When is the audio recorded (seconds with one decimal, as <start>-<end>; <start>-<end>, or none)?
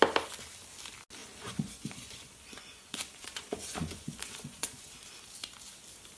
0.0-1.2; 4.9-6.2